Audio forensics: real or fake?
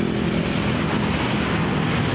fake